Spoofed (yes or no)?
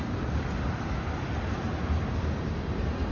no